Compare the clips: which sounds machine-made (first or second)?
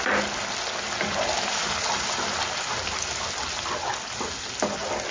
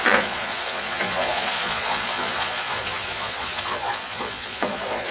second